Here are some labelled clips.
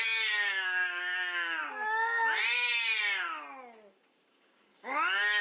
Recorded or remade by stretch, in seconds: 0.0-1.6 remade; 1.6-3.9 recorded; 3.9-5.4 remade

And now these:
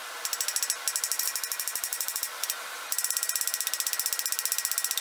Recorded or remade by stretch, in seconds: 0.0-1.9 recorded; 1.9-3.4 remade; 3.4-5.0 recorded